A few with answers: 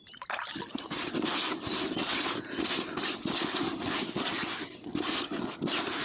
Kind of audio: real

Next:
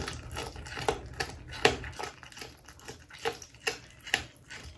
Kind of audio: real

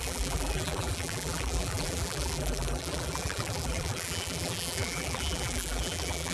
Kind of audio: fake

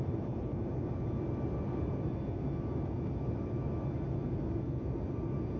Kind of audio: real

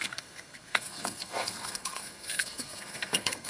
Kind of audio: fake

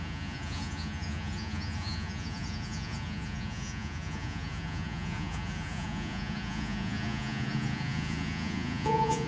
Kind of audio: fake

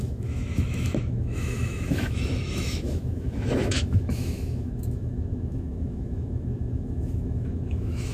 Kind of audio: fake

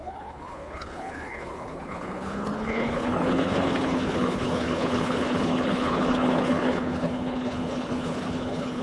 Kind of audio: fake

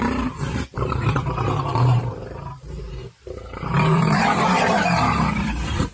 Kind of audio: fake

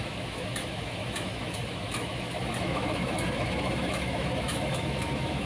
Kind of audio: fake